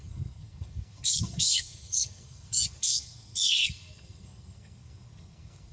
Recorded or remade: remade